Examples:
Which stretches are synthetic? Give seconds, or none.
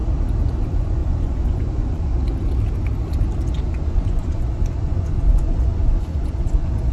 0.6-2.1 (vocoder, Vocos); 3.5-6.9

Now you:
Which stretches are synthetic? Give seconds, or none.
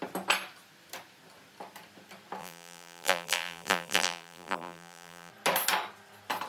2.4-5.3 (vocoder, BigVGAN v2)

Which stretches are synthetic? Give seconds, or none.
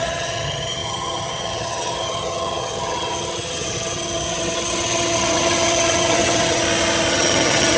0.0-6.6 (vocoder, HiFi-GAN); 7.1-7.8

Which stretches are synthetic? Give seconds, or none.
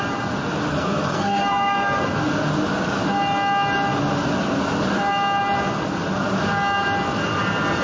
0.7-2.0 (codec, SNAC)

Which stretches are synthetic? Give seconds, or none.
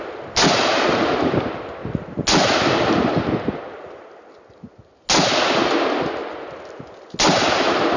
none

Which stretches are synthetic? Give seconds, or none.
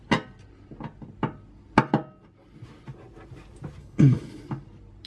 3.8-4.4 (codec, HILCodec)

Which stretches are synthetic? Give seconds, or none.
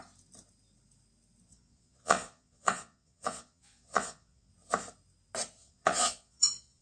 1.5-4.5 (vocoder, Vocos); 5.6-6.8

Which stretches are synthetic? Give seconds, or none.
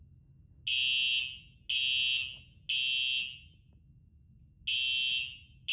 none